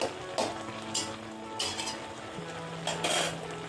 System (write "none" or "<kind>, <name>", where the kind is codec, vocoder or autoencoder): none